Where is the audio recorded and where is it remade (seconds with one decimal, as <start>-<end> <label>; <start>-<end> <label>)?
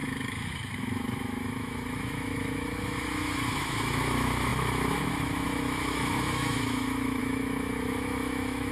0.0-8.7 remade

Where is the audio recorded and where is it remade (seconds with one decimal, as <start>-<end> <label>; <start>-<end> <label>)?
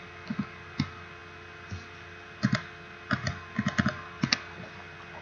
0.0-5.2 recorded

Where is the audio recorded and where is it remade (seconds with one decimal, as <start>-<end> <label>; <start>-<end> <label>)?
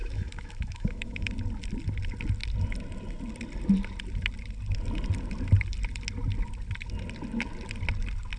0.0-1.3 remade; 1.3-8.4 recorded